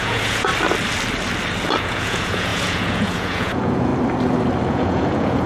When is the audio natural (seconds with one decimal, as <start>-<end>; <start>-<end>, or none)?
0.5-1.8; 3.9-4.7